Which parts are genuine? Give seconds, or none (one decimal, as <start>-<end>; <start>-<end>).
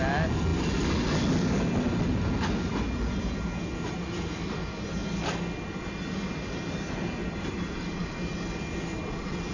0.0-7.2; 8.2-9.5